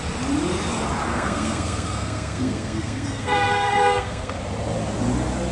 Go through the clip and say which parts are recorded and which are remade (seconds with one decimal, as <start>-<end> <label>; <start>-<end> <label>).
0.0-1.1 recorded; 1.1-4.4 remade; 4.4-5.5 recorded